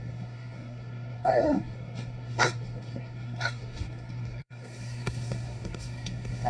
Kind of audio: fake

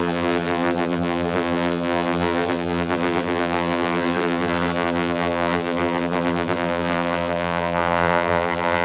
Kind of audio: fake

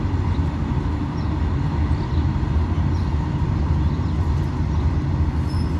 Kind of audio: real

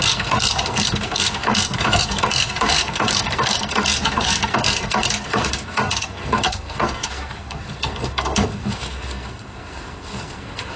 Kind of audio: fake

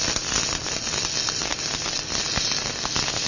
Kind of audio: real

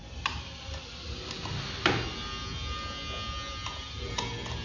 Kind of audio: real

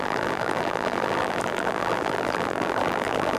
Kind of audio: fake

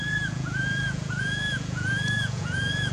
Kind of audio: fake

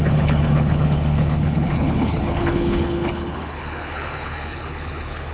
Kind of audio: fake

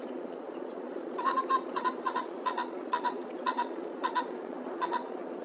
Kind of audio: fake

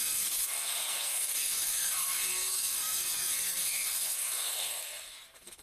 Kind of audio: fake